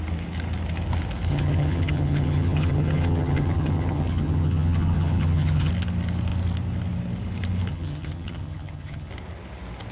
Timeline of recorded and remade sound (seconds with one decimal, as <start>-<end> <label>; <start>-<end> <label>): 0.0-1.3 recorded; 1.3-5.7 remade; 5.7-7.7 recorded; 7.7-9.1 remade; 9.1-9.9 recorded